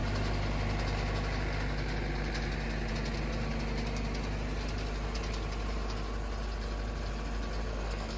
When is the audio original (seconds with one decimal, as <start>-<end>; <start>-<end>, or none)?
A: 0.0-7.7